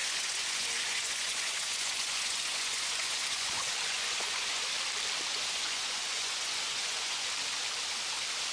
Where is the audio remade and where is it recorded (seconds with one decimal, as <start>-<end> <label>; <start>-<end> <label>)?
0.0-4.6 remade; 4.6-5.3 recorded; 5.3-7.3 remade; 7.3-8.5 recorded